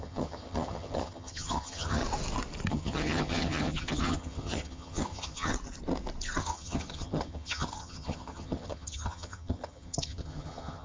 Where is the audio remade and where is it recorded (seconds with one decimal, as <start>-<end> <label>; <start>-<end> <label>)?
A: 0.0-2.0 remade; 2.0-2.7 recorded; 2.7-5.5 remade; 5.5-6.4 recorded; 6.4-10.8 remade